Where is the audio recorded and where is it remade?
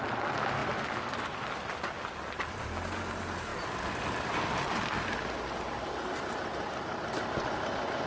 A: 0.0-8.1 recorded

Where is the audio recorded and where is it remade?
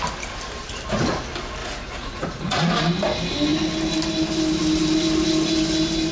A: 0.0-1.6 recorded; 1.6-2.7 remade; 2.7-6.1 recorded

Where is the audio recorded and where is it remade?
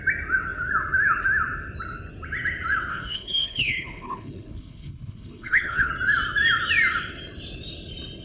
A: 0.0-2.9 recorded; 2.9-5.9 remade; 5.9-8.2 recorded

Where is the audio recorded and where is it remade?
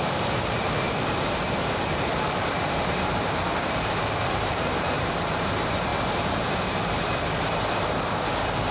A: 0.0-5.9 remade; 5.9-6.7 recorded; 6.7-8.7 remade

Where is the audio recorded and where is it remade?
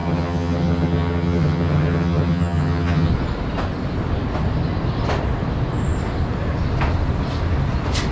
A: 0.0-3.1 remade; 3.1-8.1 recorded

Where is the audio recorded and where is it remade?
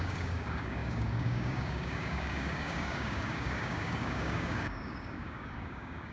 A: 0.0-6.1 remade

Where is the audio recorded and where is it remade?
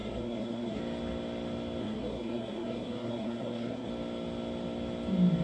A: 0.0-0.8 remade; 0.8-1.8 recorded; 1.8-3.9 remade; 3.9-5.4 recorded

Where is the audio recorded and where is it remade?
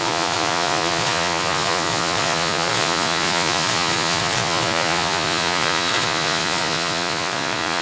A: 0.0-7.8 remade